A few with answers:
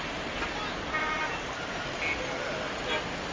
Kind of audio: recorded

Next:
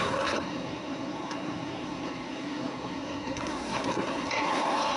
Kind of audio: remade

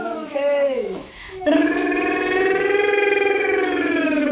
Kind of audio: remade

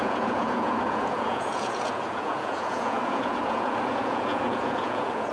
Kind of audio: remade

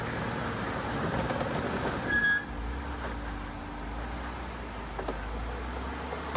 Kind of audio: recorded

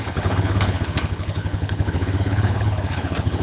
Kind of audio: remade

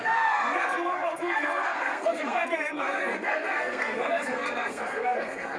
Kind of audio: remade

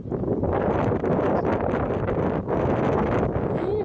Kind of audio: recorded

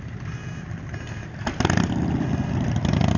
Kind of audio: recorded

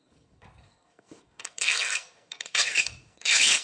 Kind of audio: remade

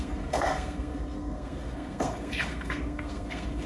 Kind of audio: remade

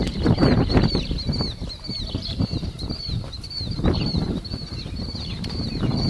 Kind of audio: remade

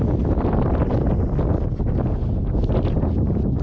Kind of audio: recorded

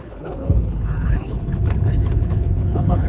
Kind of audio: remade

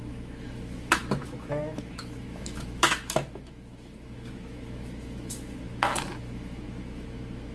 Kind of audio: remade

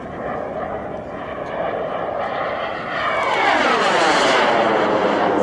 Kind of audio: recorded